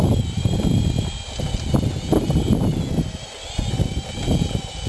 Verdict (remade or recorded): recorded